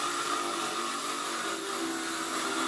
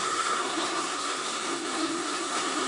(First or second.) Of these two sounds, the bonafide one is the first